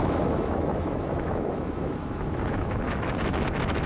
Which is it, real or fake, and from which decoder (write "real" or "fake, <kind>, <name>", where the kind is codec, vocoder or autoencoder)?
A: fake, autoencoder, DAC-VAE